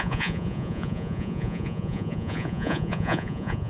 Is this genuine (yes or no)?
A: no